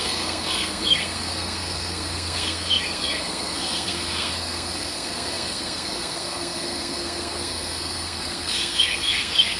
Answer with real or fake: fake